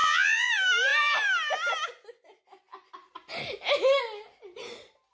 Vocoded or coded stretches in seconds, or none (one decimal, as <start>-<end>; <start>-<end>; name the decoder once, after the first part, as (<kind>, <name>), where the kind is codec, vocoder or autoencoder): 0.0-0.5 (vocoder, Vocos)